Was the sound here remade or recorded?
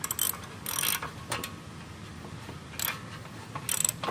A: recorded